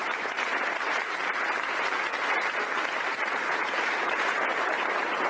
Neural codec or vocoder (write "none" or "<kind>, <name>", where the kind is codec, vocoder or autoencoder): vocoder, BigVGAN v2